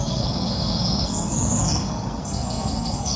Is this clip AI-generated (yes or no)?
yes